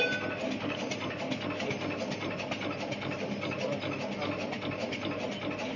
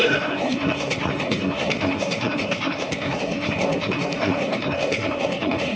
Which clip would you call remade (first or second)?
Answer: second